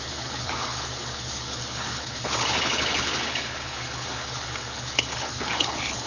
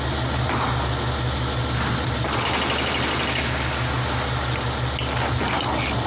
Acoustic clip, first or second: second